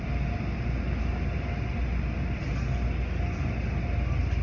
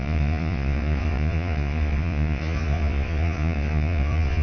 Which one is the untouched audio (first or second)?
first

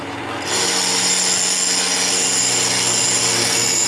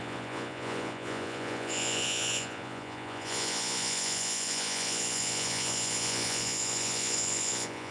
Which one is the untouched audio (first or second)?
first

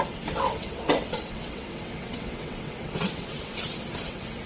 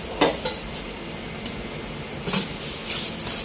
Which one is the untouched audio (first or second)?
second